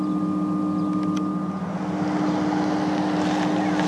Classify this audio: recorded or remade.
recorded